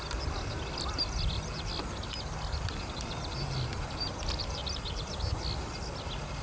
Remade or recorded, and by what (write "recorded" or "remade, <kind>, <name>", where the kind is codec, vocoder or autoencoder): recorded